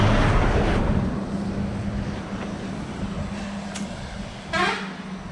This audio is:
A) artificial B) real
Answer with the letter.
B